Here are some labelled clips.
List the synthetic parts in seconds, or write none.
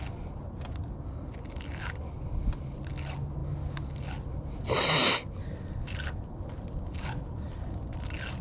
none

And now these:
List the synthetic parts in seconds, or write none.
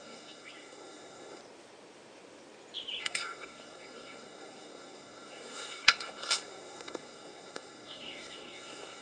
0.0-1.4 (codec, SNAC); 3.0-9.0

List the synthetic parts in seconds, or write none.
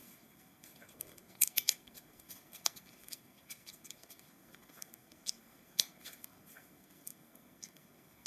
0.0-8.3 (codec, SNAC)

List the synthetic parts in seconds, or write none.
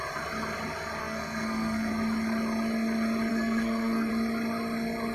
1.0-1.9 (codec, SNAC); 3.3-4.1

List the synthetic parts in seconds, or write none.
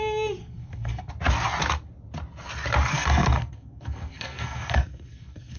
0.4-1.1 (codec, SNAC); 2.9-5.6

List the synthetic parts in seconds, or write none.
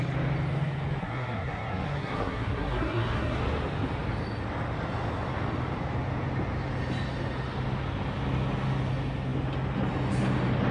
1.0-3.4 (codec, SNAC)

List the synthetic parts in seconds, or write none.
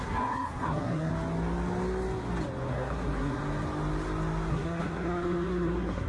0.0-1.1 (codec, SNAC); 2.7-3.4; 4.5-6.1